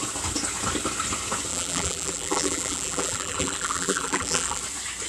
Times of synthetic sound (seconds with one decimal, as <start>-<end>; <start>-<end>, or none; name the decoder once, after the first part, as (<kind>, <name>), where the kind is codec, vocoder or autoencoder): 1.5-4.6 (vocoder, BigVGAN v2)